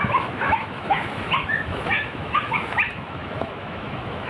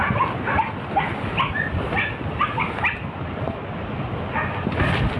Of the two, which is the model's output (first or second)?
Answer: first